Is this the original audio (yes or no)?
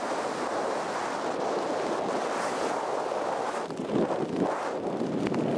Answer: yes